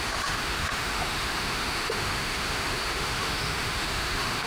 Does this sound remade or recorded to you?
remade